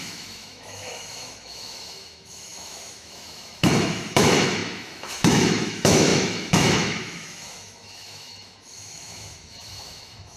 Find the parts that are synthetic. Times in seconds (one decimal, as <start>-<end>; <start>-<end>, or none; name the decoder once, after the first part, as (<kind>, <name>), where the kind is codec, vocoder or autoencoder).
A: 0.0-10.4 (autoencoder, DAC-VAE)